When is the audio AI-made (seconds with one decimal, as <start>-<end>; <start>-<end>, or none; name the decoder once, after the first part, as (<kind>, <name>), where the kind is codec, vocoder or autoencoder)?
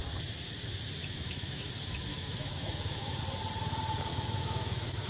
1.0-1.7 (autoencoder, DAC-VAE); 2.1-3.2; 4.1-5.1